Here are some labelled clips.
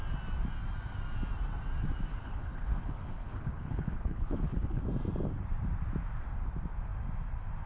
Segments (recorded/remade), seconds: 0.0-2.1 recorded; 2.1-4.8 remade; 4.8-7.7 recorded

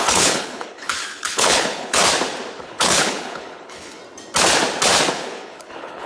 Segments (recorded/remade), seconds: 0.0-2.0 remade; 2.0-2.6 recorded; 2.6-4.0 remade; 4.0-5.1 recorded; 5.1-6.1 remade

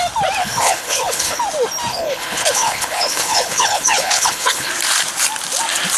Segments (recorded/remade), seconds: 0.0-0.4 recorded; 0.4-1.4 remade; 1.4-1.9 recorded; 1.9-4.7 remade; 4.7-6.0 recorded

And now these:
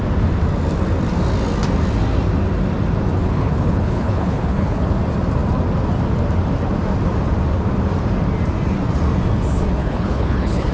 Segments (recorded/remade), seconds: 0.0-3.2 recorded; 3.2-4.9 remade; 4.9-9.8 recorded; 9.8-10.7 remade

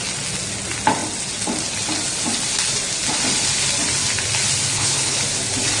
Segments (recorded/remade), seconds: 0.0-4.7 recorded; 4.7-5.2 remade; 5.2-5.8 recorded